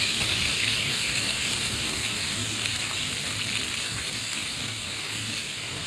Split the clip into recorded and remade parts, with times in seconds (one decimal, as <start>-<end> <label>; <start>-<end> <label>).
0.0-3.1 remade; 3.1-3.8 recorded; 3.8-5.9 remade